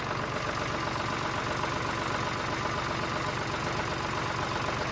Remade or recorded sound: recorded